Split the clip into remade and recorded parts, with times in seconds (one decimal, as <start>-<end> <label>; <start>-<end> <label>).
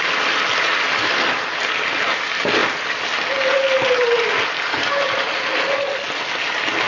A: 0.0-2.6 recorded; 2.6-4.9 remade; 4.9-6.9 recorded